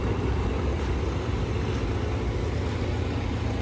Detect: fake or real real